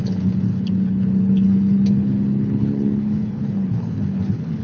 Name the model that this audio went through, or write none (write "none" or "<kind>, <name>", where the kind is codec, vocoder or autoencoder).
codec, HILCodec